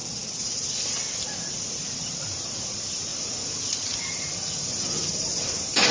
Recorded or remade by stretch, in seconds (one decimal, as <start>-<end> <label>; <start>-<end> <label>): 0.0-3.1 recorded; 3.1-5.9 remade

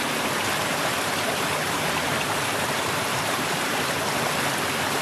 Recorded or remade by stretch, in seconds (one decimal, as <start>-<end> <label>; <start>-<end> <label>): 0.0-0.6 recorded; 0.6-2.4 remade; 2.4-3.1 recorded; 3.1-3.9 remade; 3.9-5.0 recorded

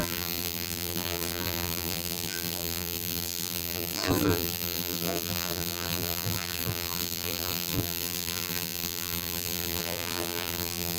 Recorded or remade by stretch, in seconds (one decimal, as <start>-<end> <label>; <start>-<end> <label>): 0.0-11.0 remade

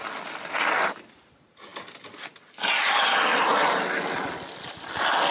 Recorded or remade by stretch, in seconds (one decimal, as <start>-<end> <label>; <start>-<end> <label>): 0.0-5.3 recorded

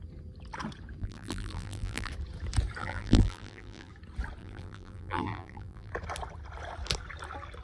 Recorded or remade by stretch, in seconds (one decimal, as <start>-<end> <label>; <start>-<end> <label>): 0.0-1.0 recorded; 1.0-2.1 remade; 2.1-2.8 recorded; 2.8-3.9 remade; 3.9-4.4 recorded; 4.4-5.9 remade; 5.9-7.6 recorded